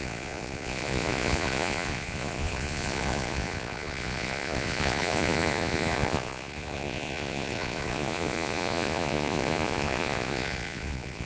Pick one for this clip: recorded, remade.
remade